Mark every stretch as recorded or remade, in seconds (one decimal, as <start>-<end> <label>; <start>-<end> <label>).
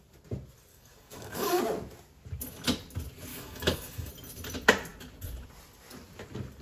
0.0-0.7 recorded; 0.7-1.6 remade; 1.6-3.3 recorded; 3.3-4.1 remade; 4.1-6.6 recorded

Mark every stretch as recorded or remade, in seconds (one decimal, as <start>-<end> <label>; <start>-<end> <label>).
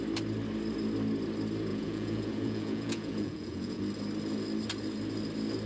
0.0-1.7 recorded; 1.7-3.8 remade; 3.8-5.7 recorded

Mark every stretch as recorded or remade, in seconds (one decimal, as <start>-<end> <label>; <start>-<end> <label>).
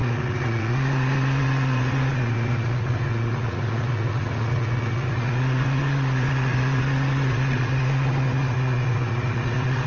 0.0-9.9 remade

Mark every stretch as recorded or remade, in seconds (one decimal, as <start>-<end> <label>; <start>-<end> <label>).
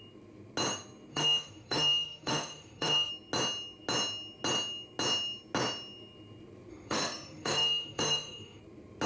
0.0-1.1 recorded; 1.1-3.1 remade; 3.1-6.7 recorded; 6.7-8.6 remade; 8.6-9.1 recorded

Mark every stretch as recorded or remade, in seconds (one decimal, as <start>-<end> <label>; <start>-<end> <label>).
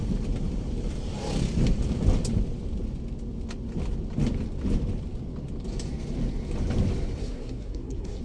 0.0-7.2 recorded; 7.2-8.2 remade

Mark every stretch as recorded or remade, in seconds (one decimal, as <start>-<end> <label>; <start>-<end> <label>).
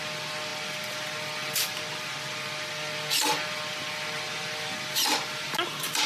0.0-6.1 recorded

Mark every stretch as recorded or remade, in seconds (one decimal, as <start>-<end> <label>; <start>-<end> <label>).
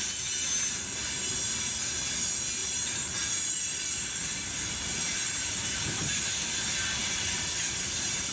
0.0-2.6 recorded; 2.6-6.0 remade; 6.0-7.0 recorded; 7.0-8.3 remade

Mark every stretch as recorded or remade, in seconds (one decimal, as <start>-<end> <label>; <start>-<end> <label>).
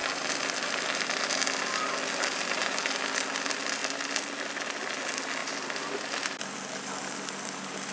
0.0-7.9 recorded